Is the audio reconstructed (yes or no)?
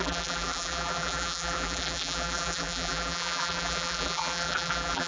yes